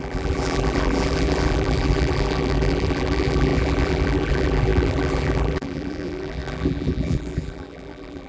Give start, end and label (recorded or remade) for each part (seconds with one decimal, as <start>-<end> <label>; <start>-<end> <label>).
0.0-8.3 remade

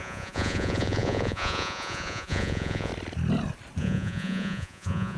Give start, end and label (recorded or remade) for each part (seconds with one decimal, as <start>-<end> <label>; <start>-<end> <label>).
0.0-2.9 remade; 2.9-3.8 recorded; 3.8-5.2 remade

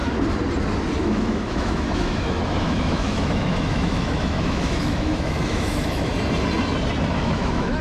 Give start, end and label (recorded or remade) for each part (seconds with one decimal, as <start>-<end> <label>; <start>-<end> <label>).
0.0-1.0 recorded; 1.0-6.1 remade; 6.1-7.1 recorded; 7.1-7.8 remade

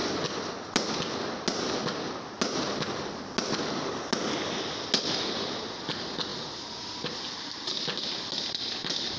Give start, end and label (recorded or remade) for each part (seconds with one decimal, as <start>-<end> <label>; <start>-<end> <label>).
0.0-9.2 recorded

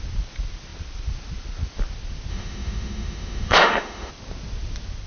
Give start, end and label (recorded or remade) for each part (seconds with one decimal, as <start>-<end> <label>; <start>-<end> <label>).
0.0-2.3 recorded; 2.3-4.1 remade; 4.1-5.1 recorded

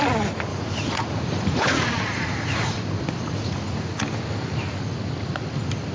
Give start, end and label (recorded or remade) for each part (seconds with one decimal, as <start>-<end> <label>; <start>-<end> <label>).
0.0-0.5 recorded; 0.5-4.0 remade; 4.0-5.9 recorded

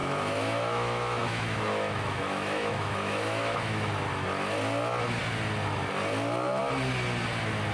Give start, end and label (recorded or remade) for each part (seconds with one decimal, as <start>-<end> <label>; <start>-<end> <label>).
0.0-3.9 remade; 3.9-7.7 recorded

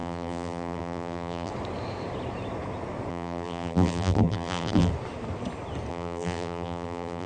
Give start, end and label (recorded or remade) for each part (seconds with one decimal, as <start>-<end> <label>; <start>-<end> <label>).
0.0-1.5 remade; 1.5-3.1 recorded; 3.1-4.9 remade; 4.9-5.9 recorded; 5.9-7.3 remade